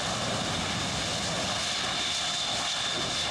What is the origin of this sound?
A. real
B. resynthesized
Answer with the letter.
A